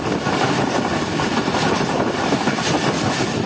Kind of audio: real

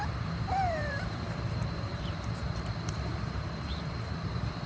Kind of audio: fake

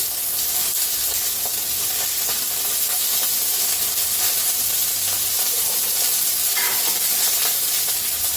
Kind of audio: real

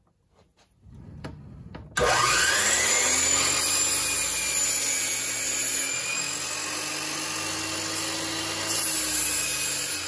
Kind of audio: real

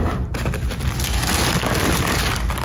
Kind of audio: real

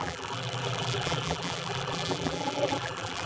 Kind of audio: fake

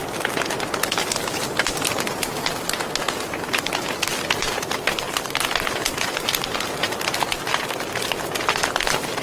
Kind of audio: real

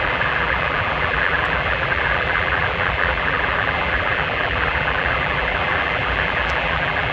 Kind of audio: fake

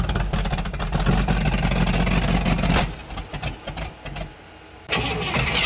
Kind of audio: real